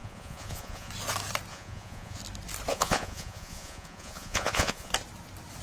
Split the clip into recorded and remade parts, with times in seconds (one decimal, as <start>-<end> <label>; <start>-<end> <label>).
0.0-0.9 remade; 0.9-1.5 recorded; 1.5-2.2 remade; 2.2-2.7 recorded; 2.7-4.9 remade; 4.9-5.6 recorded